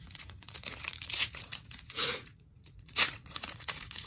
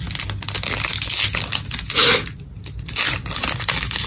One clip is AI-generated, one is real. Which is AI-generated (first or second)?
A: first